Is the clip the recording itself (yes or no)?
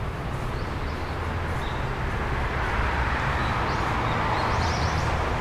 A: yes